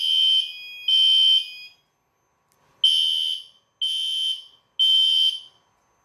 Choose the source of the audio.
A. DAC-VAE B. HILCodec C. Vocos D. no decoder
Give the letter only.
D